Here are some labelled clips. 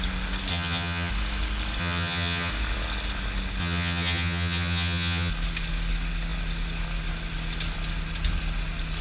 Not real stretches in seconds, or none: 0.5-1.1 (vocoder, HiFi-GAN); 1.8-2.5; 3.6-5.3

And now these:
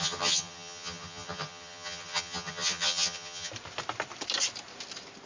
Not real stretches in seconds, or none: 0.0-3.5 (vocoder, HiFi-GAN)

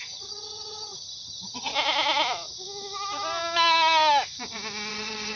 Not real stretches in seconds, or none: 0.0-1.7 (vocoder, HiFi-GAN); 4.9-5.4

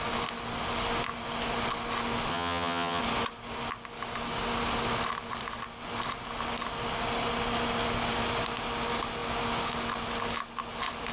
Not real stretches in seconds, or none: 2.3-3.0 (vocoder, HiFi-GAN)